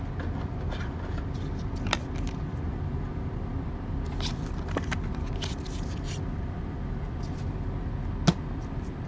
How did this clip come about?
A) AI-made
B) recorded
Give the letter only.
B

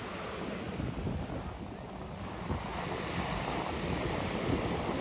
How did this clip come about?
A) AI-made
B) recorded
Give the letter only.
B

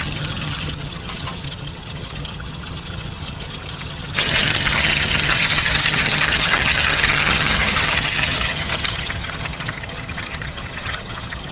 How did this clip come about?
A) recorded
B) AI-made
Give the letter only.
B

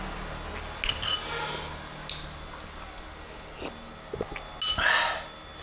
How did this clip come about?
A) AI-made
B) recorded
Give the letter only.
B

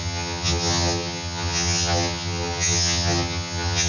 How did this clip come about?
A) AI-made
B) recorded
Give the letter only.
A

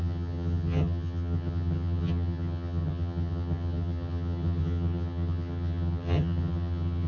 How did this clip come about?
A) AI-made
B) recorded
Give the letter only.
A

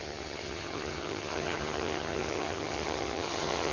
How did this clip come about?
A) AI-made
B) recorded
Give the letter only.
A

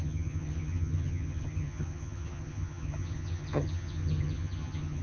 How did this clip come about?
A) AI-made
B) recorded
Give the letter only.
A